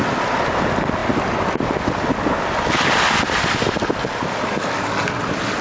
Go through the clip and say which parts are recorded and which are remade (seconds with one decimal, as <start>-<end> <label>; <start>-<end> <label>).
0.0-5.6 recorded